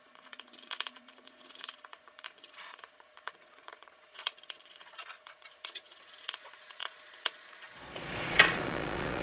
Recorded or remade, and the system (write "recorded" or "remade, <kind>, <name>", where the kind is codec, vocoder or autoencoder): remade, vocoder, Vocos